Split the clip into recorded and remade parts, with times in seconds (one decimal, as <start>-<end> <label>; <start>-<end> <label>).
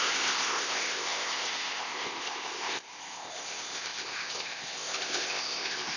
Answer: 0.0-6.0 remade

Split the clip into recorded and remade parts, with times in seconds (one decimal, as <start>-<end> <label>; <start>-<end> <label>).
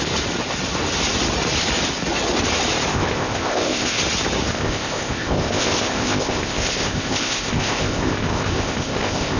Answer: 0.0-2.9 recorded; 2.9-4.0 remade; 4.0-4.5 recorded; 4.5-9.4 remade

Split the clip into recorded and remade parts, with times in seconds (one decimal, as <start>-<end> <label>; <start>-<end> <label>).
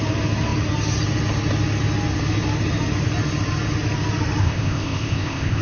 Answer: 0.0-4.4 recorded; 4.4-5.6 remade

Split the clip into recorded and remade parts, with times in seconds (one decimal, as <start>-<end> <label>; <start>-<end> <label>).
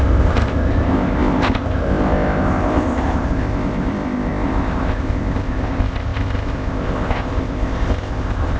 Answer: 0.0-8.6 remade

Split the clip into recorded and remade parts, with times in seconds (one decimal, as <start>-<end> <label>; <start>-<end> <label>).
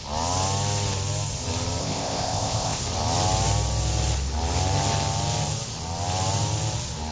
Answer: 0.0-1.8 recorded; 1.8-2.8 remade; 2.8-7.1 recorded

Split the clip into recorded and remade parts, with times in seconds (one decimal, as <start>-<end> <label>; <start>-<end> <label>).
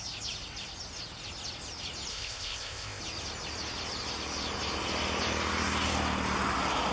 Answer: 0.0-2.1 recorded; 2.1-3.0 remade; 3.0-6.9 recorded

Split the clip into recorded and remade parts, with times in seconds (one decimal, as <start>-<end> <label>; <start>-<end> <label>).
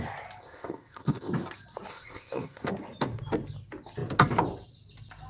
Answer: 0.0-0.4 recorded; 0.4-1.3 remade; 1.3-1.9 recorded; 1.9-2.7 remade; 2.7-5.3 recorded